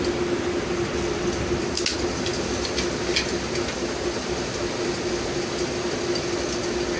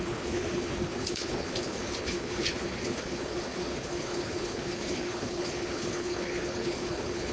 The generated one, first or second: second